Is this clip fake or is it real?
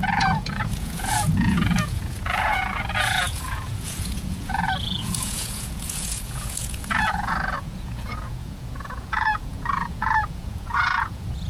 fake